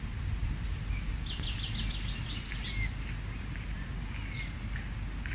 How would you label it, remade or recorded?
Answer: recorded